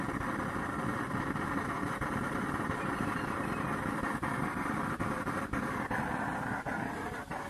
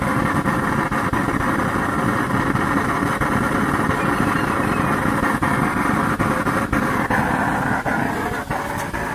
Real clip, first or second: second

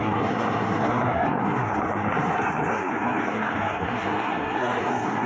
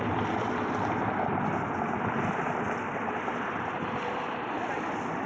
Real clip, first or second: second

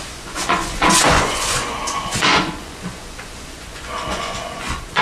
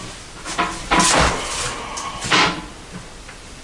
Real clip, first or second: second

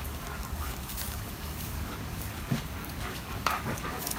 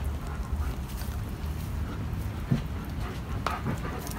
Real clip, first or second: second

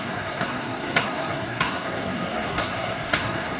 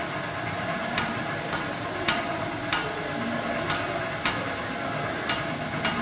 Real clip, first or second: second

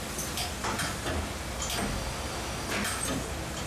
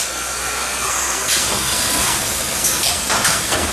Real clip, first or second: first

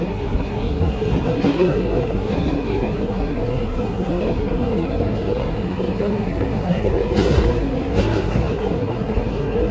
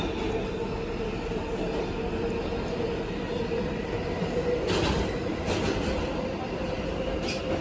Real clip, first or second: second